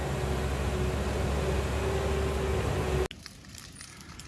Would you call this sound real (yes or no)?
yes